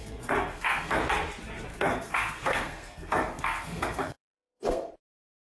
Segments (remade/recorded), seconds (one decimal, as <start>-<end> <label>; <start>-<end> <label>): 0.0-1.0 remade; 1.0-1.7 recorded; 1.7-4.9 remade; 4.9-5.4 recorded